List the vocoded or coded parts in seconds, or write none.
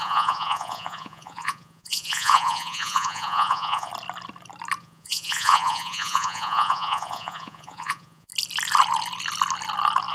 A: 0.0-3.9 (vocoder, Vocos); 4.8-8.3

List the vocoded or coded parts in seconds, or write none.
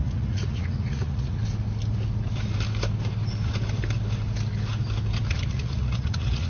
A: 0.0-1.4 (vocoder, Vocos); 5.3-6.5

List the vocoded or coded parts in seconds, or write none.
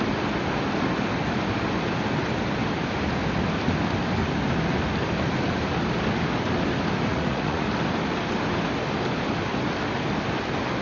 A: 7.1-7.7 (vocoder, Vocos)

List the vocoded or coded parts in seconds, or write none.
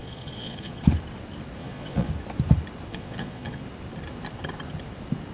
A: 0.0-0.8 (vocoder, Vocos); 1.6-2.1; 2.9-3.6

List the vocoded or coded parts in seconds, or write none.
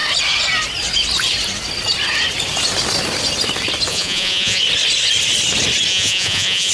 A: 3.9-4.6 (vocoder, Vocos); 5.9-6.7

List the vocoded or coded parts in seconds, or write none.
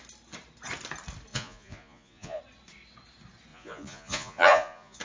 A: 1.3-2.4 (vocoder, Vocos); 3.5-5.0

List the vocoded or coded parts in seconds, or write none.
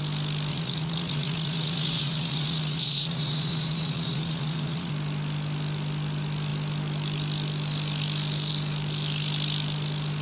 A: 0.5-4.9 (vocoder, Vocos)